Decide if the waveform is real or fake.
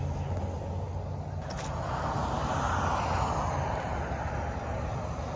real